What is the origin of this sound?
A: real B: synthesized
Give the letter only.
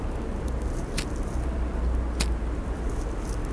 A